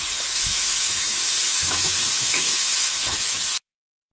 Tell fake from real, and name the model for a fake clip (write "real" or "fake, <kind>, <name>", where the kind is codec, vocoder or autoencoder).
fake, autoencoder, DAC-VAE